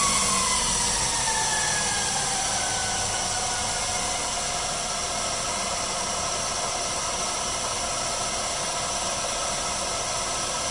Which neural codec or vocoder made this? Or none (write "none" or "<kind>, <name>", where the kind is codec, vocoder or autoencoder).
vocoder, BigVGAN v2